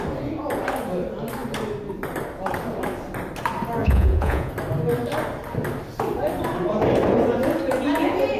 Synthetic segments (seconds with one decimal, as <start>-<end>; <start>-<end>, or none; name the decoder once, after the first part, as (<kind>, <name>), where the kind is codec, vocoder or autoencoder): 3.8-4.5 (vocoder, Vocos)